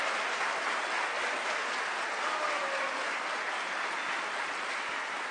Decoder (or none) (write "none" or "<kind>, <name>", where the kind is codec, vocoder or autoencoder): none